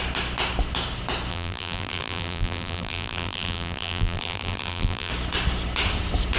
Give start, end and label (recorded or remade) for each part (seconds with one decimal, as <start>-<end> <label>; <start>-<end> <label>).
0.0-1.3 recorded; 1.3-5.1 remade; 5.1-6.4 recorded